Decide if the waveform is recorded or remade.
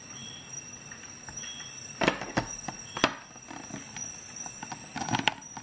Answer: remade